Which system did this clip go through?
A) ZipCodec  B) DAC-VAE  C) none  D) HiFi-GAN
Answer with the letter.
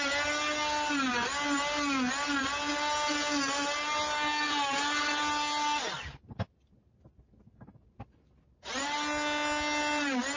C